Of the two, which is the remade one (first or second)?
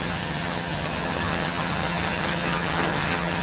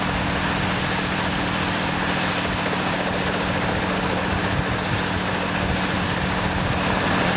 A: first